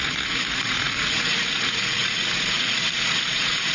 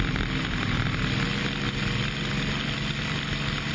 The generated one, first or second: first